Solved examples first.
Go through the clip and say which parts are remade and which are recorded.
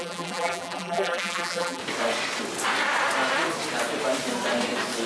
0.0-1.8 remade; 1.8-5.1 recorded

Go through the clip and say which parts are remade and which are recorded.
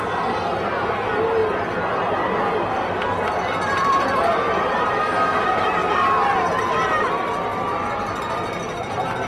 0.0-1.4 recorded; 1.4-5.0 remade; 5.0-7.5 recorded; 7.5-8.2 remade; 8.2-9.3 recorded